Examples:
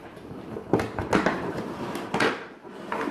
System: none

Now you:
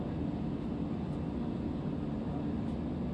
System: none